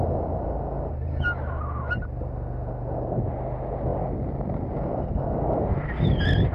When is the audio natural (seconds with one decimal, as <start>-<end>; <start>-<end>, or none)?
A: 0.0-6.5